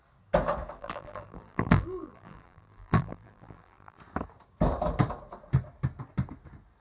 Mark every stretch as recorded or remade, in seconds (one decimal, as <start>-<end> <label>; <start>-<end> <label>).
0.0-0.8 recorded; 0.8-4.0 remade; 4.0-6.8 recorded

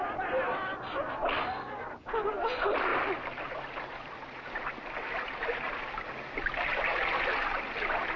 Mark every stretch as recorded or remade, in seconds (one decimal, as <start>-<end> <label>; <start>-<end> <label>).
0.0-8.2 recorded

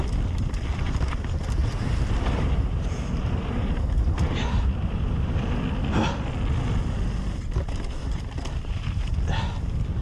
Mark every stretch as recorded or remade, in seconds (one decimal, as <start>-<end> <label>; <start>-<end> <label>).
0.0-1.6 recorded; 1.6-5.6 remade; 5.6-8.0 recorded; 8.0-9.1 remade; 9.1-10.0 recorded

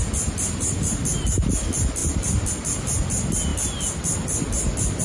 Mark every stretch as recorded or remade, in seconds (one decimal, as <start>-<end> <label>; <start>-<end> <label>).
0.0-5.0 recorded

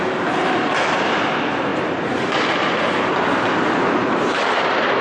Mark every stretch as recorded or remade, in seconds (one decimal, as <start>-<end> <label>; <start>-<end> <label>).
0.0-1.7 recorded; 1.7-2.3 remade; 2.3-4.0 recorded; 4.0-5.0 remade

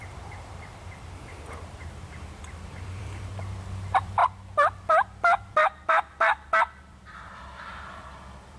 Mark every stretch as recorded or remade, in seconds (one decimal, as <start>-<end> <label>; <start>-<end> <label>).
0.0-8.6 remade

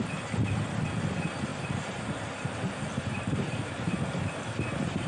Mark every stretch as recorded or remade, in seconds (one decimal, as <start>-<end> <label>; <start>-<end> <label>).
0.0-1.5 recorded; 1.5-4.6 remade; 4.6-5.1 recorded

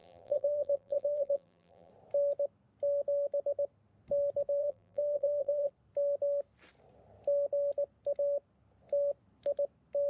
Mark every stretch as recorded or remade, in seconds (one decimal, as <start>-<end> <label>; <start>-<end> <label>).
0.0-1.9 remade; 1.9-4.6 recorded; 4.6-5.7 remade; 5.7-10.1 recorded